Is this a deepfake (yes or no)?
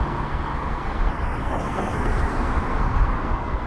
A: yes